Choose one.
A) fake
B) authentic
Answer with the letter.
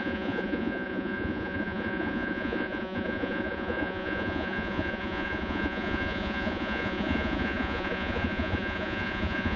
A